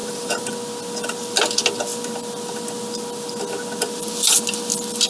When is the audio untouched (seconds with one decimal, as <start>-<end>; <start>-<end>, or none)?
0.5-5.1